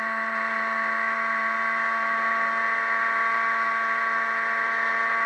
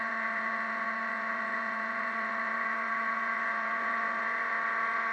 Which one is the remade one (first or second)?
second